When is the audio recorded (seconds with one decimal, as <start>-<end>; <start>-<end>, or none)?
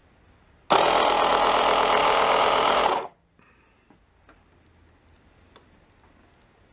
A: 0.0-2.0; 2.8-6.7